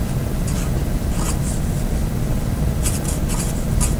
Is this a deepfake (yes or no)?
no